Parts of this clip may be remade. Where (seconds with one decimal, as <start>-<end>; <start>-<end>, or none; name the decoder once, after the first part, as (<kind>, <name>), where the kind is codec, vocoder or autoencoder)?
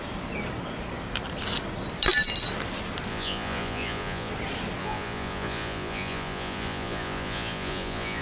3.1-4.3 (vocoder, Vocos); 4.8-8.2